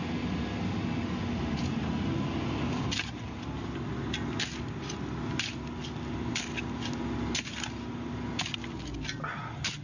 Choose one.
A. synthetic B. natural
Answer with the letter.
B